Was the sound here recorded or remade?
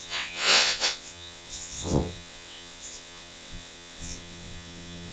remade